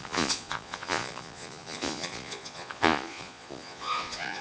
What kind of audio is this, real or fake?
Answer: fake